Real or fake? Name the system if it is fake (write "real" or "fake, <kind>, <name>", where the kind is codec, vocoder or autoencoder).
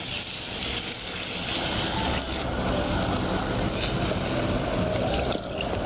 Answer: real